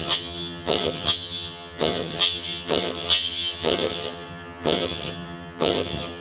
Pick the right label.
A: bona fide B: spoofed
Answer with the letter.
B